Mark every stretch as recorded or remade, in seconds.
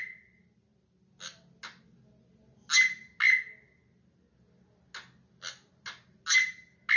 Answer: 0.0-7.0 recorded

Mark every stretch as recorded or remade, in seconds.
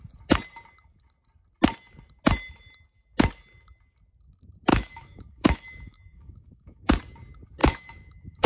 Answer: 0.0-4.7 recorded; 4.7-6.8 remade; 6.8-7.6 recorded; 7.6-8.5 remade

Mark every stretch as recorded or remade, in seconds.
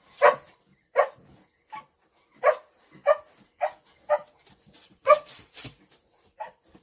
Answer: 0.0-4.8 recorded; 4.8-5.8 remade; 5.8-6.8 recorded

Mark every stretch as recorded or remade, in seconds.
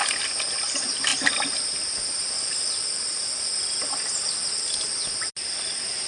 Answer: 0.0-6.1 recorded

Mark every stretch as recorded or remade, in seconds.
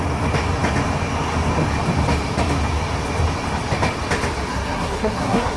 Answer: 0.0-4.5 recorded; 4.5-5.6 remade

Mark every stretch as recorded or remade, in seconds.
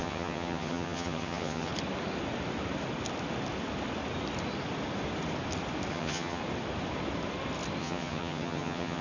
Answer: 0.0-1.7 remade; 1.7-5.9 recorded; 5.9-6.4 remade; 6.4-7.8 recorded; 7.8-9.0 remade